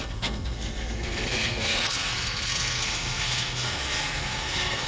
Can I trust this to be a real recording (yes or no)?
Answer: no